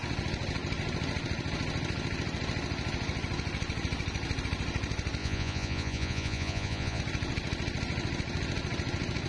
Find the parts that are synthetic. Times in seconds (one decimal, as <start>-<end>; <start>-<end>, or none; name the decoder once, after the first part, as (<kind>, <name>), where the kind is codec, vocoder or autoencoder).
5.2-7.0 (vocoder, Vocos)